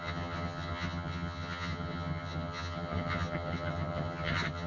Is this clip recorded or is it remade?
remade